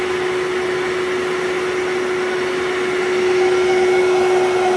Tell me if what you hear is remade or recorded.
recorded